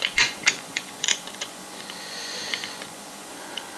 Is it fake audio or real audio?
fake